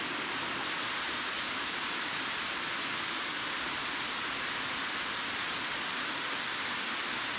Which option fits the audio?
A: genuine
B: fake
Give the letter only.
A